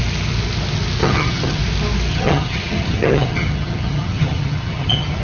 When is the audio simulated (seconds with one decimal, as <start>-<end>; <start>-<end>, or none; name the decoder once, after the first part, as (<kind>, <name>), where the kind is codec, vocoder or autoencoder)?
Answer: 1.0-1.6 (vocoder, HiFi-GAN); 2.1-5.2